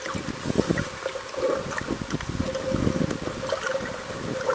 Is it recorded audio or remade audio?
recorded